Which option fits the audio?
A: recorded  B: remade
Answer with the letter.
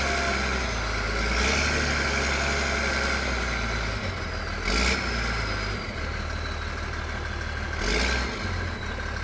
A